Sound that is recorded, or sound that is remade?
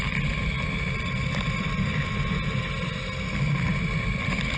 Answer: recorded